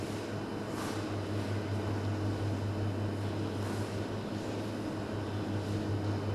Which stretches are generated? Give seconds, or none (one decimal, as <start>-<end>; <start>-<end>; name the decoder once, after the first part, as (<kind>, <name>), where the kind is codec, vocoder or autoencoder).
none